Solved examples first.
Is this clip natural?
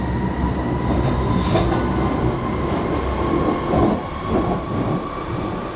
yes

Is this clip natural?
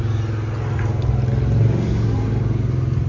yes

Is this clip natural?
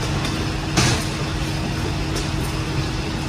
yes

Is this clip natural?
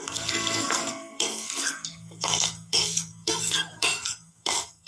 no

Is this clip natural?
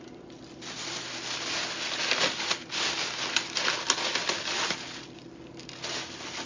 yes